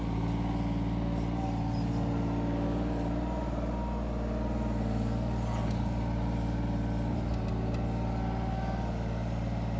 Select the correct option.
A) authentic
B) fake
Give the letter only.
A